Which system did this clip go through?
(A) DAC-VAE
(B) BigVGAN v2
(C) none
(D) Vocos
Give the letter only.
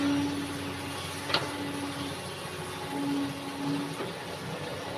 C